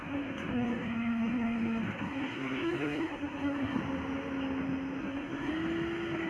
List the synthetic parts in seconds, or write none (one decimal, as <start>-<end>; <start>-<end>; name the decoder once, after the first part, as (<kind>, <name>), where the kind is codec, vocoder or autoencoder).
0.0-3.8 (codec, SNAC); 5.0-5.5